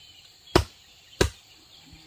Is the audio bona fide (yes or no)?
yes